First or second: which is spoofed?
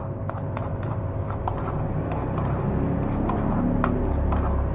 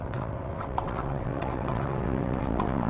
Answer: second